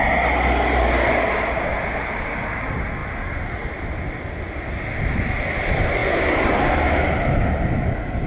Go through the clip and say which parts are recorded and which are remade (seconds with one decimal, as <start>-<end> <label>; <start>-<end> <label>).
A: 0.0-3.0 recorded; 3.0-5.3 remade; 5.3-8.3 recorded